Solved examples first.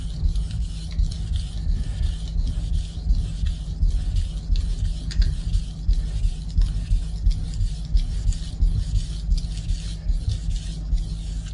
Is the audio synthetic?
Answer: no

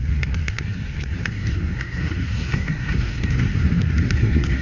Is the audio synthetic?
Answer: yes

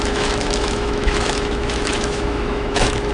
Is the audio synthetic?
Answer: yes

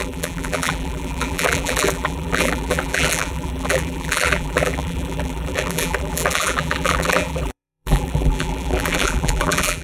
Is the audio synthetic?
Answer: yes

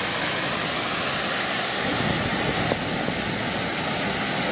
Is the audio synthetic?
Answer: no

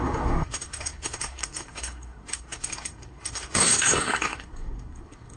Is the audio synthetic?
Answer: yes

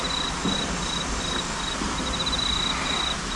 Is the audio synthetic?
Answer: no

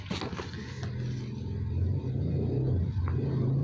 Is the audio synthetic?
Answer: no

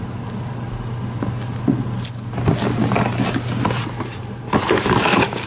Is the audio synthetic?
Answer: no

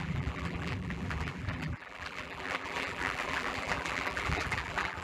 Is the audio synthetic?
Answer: yes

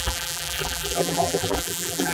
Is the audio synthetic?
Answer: yes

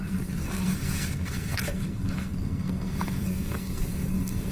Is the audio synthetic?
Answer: yes